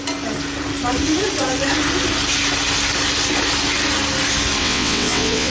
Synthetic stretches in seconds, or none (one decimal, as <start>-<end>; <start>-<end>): 4.6-5.5